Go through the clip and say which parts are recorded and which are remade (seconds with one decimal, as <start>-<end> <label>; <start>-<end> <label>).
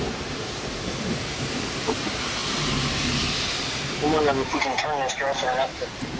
0.0-2.4 remade; 2.4-5.1 recorded; 5.1-6.2 remade